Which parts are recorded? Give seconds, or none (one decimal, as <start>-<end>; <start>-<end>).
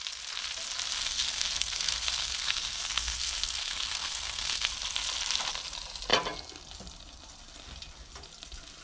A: 0.0-1.0; 4.7-8.8